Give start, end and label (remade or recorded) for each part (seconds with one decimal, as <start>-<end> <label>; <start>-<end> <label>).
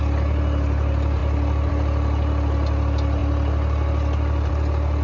0.0-5.0 recorded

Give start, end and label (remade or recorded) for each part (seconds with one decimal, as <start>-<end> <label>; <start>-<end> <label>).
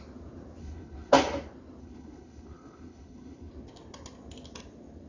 0.0-0.6 recorded; 0.6-1.1 remade; 1.1-1.8 recorded; 1.8-3.5 remade; 3.5-5.1 recorded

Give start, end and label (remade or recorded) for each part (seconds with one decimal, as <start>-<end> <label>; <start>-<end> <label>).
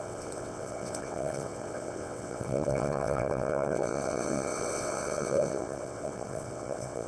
0.0-7.1 remade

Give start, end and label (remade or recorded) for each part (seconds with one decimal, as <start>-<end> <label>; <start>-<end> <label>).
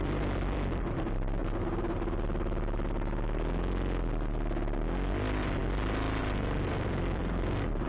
0.0-1.4 remade; 1.4-5.1 recorded; 5.1-5.6 remade; 5.6-6.2 recorded; 6.2-7.9 remade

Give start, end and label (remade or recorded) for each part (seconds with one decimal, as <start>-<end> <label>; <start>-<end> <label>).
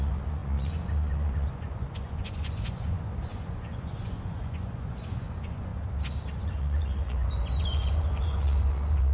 0.0-5.7 remade; 5.7-6.4 recorded; 6.4-9.1 remade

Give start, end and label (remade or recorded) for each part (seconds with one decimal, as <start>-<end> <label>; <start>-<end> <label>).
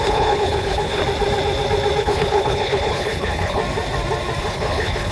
0.0-1.0 remade; 1.0-2.0 recorded; 2.0-3.6 remade; 3.6-4.4 recorded; 4.4-5.1 remade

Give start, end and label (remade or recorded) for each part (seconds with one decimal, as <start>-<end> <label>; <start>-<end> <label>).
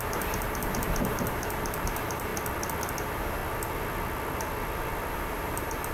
0.0-2.3 remade; 2.3-2.9 recorded; 2.9-3.4 remade; 3.4-5.1 recorded; 5.1-5.9 remade